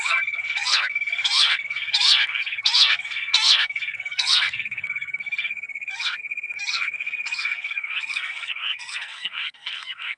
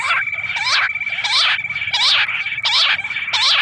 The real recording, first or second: second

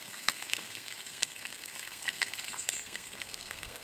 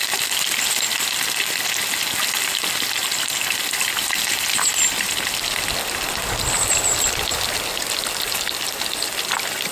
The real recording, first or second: second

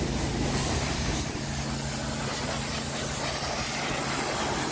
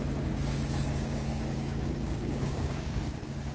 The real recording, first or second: first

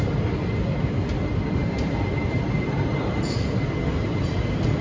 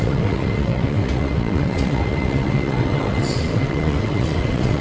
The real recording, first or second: first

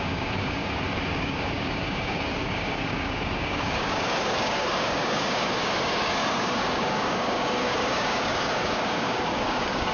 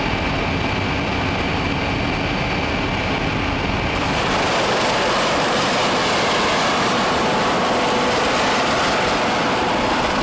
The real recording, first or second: second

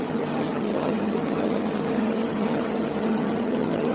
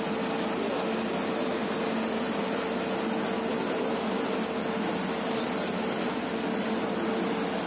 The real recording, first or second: second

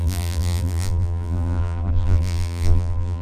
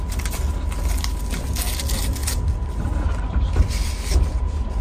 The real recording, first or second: second